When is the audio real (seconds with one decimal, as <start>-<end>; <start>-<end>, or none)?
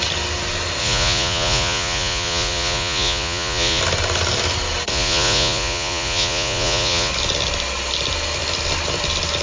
0.0-0.8; 3.8-4.9; 7.1-9.4